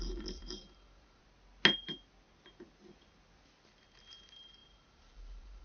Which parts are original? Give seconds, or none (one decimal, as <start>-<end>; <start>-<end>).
1.2-4.1